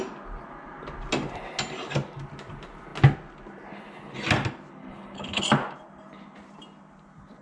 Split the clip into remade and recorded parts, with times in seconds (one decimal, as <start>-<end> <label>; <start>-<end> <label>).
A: 0.0-4.8 recorded; 4.8-5.4 remade; 5.4-7.4 recorded